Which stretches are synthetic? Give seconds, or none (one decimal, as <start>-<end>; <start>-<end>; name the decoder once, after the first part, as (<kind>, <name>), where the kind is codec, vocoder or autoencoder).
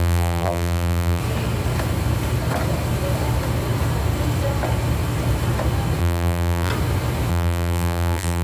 0.0-1.2 (vocoder, BigVGAN v2); 6.0-6.7; 7.3-8.4